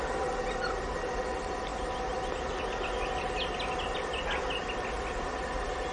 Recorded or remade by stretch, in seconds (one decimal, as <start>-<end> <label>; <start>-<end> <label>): 0.0-5.9 recorded